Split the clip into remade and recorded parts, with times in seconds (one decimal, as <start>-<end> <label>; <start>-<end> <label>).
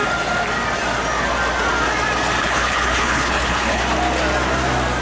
0.0-2.4 recorded; 2.4-3.8 remade; 3.8-5.0 recorded